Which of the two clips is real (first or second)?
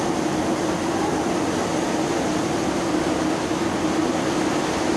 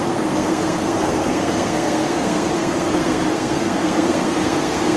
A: first